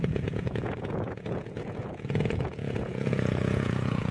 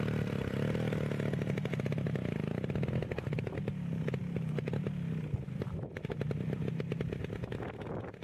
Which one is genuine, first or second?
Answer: second